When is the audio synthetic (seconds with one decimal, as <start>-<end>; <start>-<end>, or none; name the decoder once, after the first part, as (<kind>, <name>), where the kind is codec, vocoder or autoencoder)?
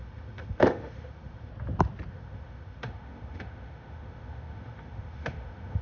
0.0-1.5 (autoencoder, DAC-VAE); 2.1-5.8